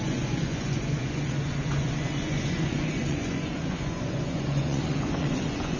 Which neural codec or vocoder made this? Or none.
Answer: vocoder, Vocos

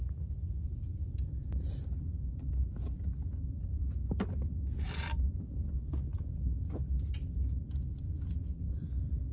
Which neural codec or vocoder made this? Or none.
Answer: none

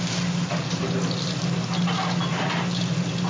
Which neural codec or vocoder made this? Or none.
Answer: none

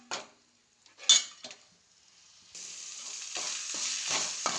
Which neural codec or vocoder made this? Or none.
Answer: none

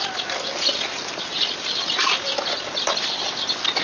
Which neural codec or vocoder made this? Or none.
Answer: none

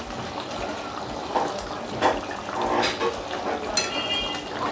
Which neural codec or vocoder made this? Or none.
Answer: none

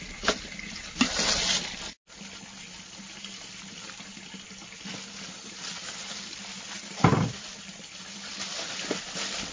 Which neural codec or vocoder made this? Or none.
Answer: none